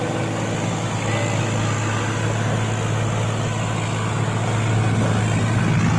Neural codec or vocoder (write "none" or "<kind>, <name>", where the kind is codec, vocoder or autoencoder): none